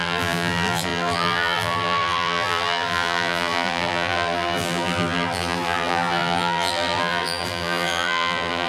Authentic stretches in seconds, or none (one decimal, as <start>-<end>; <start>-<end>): none